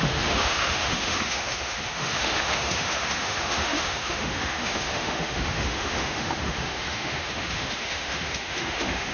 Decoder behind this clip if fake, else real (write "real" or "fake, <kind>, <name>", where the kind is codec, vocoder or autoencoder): fake, autoencoder, DAC-VAE